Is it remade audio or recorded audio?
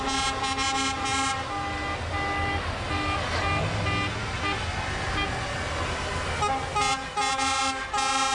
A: recorded